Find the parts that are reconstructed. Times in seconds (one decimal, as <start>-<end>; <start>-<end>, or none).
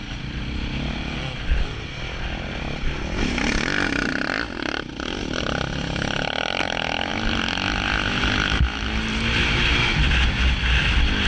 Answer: none